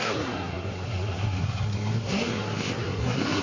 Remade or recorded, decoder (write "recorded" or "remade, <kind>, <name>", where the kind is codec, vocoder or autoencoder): remade, codec, SNAC